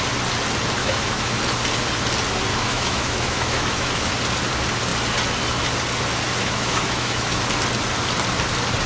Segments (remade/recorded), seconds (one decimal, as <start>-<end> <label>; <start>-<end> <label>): 0.0-0.8 recorded; 0.8-1.4 remade; 1.4-2.5 recorded; 2.5-4.1 remade; 4.1-6.4 recorded; 6.4-7.4 remade; 7.4-8.9 recorded